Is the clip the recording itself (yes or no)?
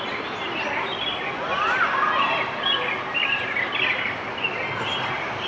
yes